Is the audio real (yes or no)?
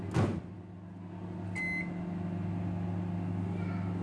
yes